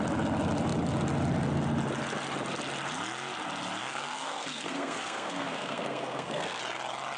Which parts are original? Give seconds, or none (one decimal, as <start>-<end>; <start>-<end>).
0.0-3.8; 6.6-7.2